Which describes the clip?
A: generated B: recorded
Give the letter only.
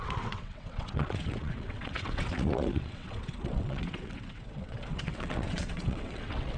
A